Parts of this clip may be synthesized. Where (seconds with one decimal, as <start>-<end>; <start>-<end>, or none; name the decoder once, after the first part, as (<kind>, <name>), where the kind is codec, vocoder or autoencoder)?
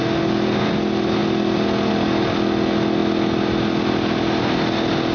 none